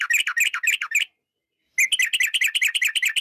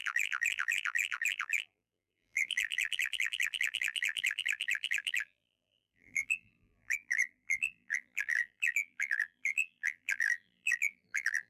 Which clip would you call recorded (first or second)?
first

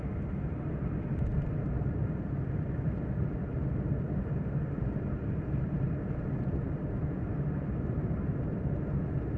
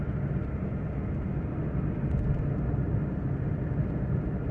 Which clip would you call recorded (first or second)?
second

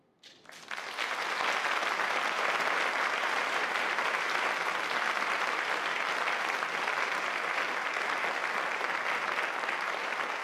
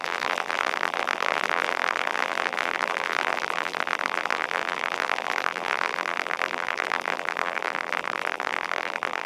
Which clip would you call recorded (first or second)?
first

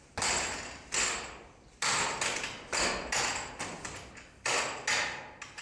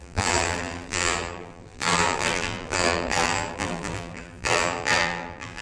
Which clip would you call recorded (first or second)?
first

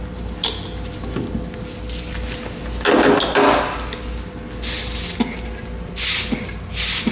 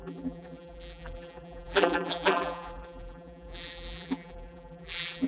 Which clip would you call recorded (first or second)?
first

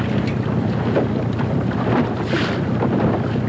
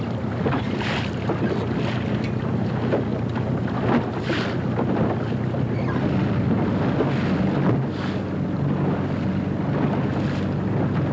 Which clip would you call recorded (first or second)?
second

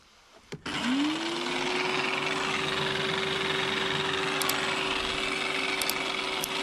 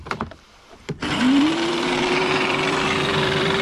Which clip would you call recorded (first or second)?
first